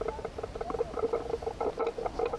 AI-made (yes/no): no